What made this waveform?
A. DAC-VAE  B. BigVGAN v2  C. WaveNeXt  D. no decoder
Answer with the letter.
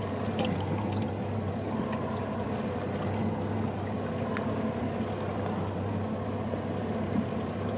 D